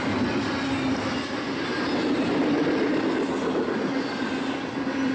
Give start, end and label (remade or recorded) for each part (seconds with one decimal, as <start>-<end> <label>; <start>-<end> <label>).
0.0-5.1 recorded